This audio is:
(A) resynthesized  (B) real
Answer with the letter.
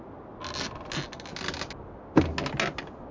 B